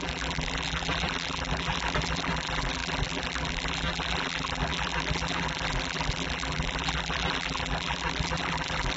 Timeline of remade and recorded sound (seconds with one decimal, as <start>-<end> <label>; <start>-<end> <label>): 0.0-9.0 remade